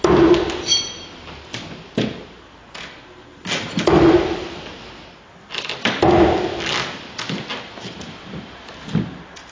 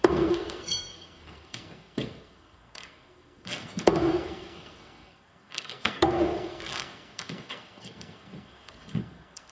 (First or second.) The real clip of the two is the first